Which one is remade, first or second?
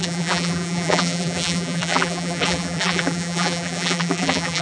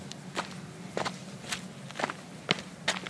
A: first